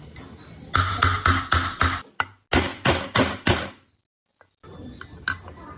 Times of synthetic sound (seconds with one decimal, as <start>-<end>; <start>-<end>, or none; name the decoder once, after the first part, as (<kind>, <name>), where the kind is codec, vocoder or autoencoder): none